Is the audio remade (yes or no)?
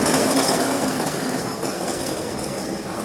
yes